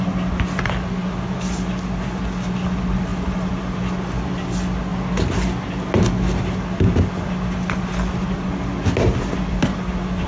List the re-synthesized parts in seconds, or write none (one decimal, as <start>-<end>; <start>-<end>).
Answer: none